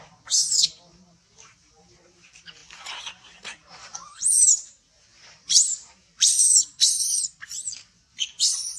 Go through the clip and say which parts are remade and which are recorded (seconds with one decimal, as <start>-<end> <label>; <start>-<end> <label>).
0.0-2.6 remade; 2.6-3.1 recorded; 3.1-8.8 remade